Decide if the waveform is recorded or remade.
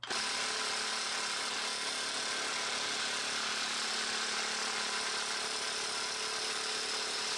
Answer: recorded